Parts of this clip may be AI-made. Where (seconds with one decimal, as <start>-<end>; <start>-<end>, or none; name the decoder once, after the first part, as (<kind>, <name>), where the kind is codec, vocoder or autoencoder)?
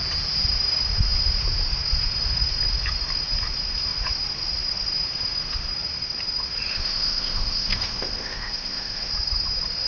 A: 6.7-9.1 (codec, ZipCodec)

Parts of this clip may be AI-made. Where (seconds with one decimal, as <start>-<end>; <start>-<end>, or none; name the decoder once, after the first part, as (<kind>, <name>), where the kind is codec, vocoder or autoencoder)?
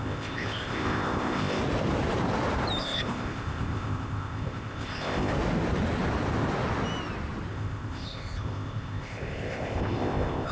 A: 0.0-1.6 (codec, ZipCodec); 2.8-5.3; 7.5-10.5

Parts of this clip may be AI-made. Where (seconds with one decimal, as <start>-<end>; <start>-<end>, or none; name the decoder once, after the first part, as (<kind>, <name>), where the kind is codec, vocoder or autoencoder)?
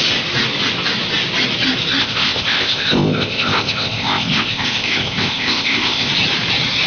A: 2.0-6.1 (codec, ZipCodec)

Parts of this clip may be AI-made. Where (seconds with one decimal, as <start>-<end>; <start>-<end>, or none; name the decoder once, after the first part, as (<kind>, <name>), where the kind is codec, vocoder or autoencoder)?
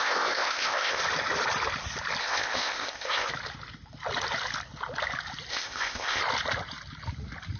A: 0.0-1.0 (codec, ZipCodec); 2.2-3.3; 5.5-6.2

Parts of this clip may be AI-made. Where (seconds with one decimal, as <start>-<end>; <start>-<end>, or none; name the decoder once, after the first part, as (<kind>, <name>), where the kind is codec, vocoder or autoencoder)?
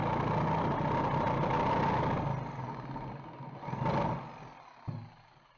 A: none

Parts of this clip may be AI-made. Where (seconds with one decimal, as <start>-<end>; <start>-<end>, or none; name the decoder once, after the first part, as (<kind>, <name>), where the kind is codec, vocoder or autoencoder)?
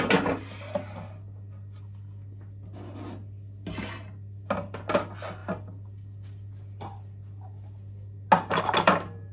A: none